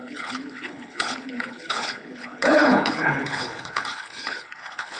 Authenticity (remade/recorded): remade